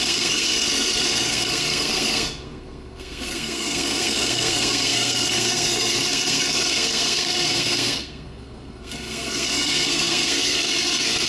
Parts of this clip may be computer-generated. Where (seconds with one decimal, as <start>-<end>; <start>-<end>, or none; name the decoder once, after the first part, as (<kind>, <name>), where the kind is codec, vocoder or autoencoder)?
0.0-11.3 (codec, SNAC)